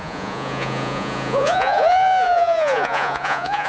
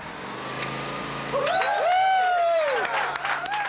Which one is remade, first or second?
first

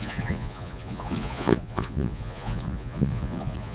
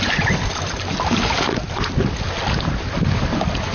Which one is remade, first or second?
first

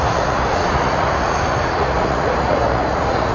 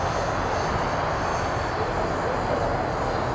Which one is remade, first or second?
first